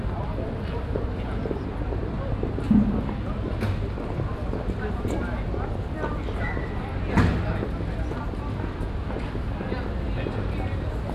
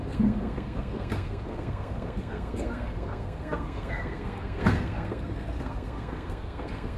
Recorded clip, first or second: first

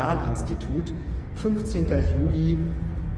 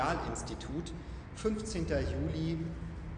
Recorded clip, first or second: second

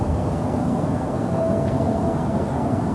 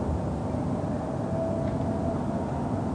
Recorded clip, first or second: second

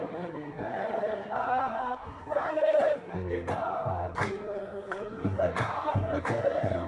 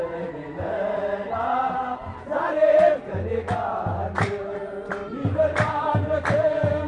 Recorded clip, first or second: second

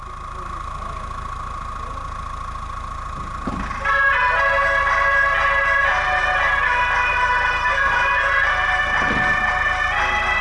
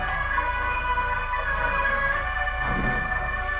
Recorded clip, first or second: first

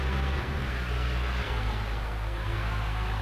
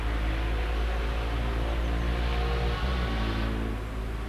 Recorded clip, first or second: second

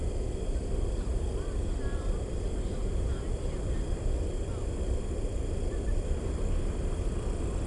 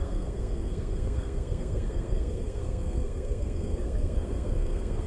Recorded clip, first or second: first